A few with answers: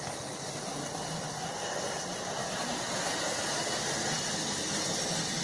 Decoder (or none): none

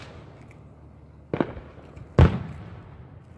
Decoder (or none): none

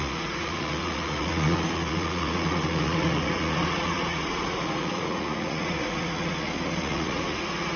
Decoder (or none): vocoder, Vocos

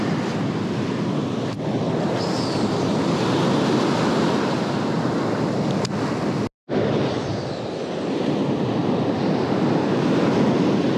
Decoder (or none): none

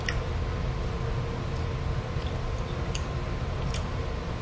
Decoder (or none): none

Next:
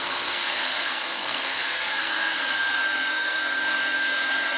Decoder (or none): codec, SNAC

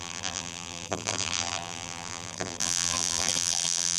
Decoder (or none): vocoder, BigVGAN v2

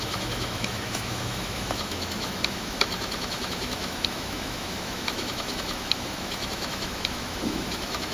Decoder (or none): autoencoder, DAC-VAE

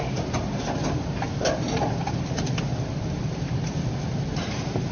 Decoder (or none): none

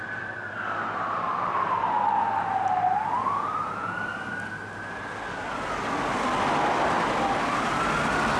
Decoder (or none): none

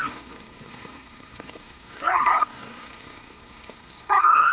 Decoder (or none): codec, SNAC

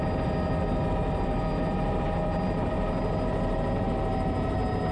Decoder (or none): none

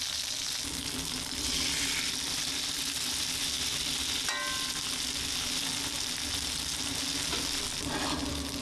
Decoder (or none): none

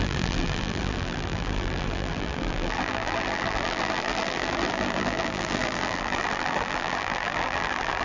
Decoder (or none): vocoder, BigVGAN v2